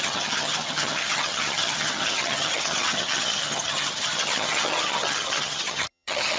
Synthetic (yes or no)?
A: yes